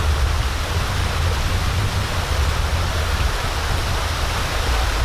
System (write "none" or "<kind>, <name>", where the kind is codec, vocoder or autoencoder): none